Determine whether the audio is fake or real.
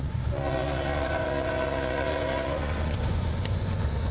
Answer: fake